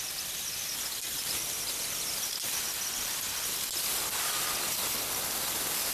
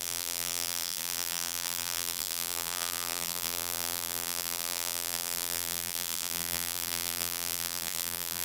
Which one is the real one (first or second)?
first